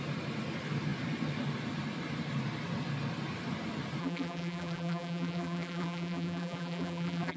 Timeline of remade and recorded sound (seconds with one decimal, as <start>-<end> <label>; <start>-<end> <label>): 0.0-4.0 recorded; 4.0-7.4 remade